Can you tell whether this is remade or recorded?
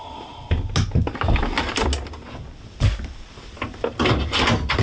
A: recorded